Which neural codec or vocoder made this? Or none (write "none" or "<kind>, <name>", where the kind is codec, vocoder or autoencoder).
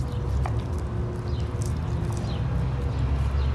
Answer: none